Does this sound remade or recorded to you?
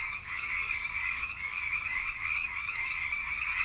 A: remade